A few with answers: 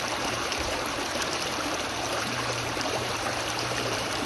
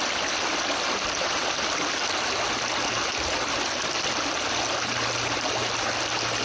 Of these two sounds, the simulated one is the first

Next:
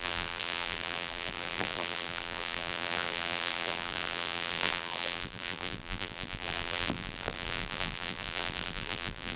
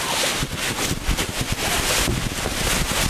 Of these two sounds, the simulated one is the first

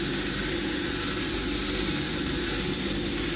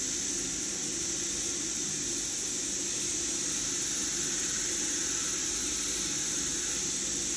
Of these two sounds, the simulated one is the second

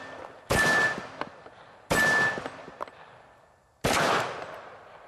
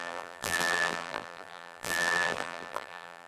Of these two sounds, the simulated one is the second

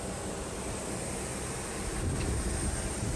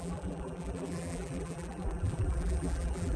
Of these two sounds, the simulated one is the second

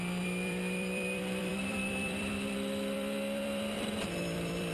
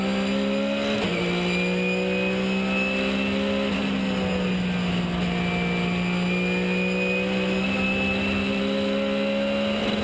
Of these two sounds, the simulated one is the first